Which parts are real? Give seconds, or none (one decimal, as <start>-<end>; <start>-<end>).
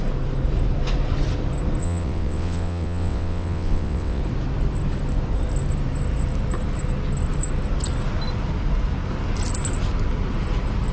0.0-1.8; 4.2-10.9